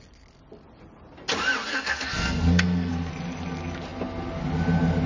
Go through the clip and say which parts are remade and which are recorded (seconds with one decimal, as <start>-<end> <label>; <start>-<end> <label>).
0.0-1.7 recorded; 1.7-3.1 remade; 3.1-5.1 recorded